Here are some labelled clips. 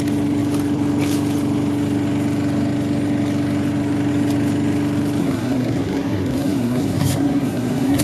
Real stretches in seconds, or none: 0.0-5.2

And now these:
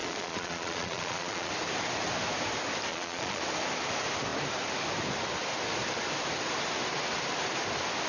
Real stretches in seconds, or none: 1.5-2.9; 3.4-8.1